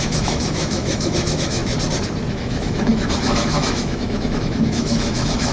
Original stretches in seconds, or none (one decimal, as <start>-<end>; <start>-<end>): 1.6-2.3